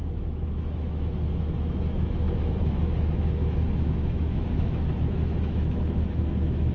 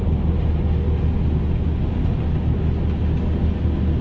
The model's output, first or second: first